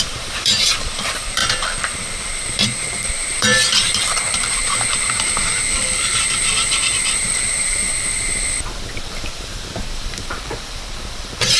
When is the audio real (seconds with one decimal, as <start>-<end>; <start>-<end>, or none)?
7.9-9.0